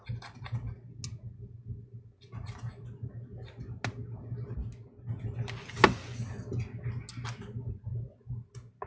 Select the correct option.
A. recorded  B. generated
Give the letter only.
A